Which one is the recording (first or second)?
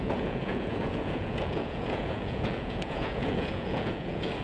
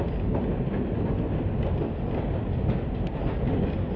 second